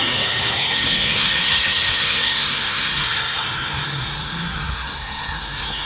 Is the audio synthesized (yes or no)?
yes